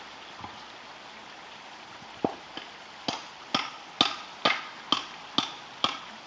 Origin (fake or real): real